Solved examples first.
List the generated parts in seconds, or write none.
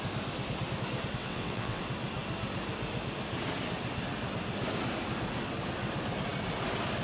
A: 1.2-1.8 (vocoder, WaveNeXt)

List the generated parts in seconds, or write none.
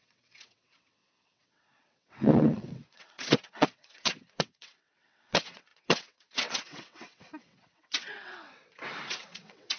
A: 0.0-9.8 (vocoder, WaveNeXt)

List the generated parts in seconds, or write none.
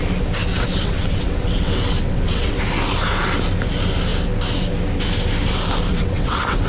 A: 0.5-2.6 (vocoder, WaveNeXt); 5.9-6.7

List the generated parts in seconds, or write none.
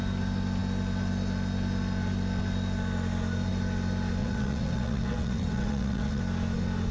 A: 4.2-6.2 (vocoder, WaveNeXt)